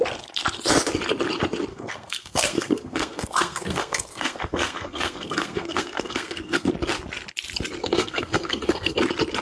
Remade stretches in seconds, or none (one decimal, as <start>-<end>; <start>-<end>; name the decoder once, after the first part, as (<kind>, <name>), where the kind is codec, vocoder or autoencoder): 1.7-6.7 (codec, SNAC); 7.8-9.0